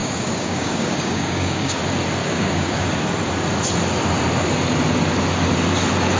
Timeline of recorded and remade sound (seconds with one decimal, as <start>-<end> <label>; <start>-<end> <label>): 0.0-1.8 remade; 1.8-2.2 recorded; 2.2-2.9 remade; 2.9-6.2 recorded